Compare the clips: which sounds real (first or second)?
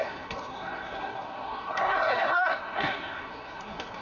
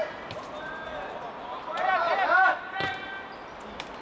second